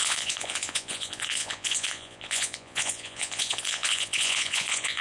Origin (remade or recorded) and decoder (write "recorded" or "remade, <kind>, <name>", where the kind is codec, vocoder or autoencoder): remade, vocoder, Vocos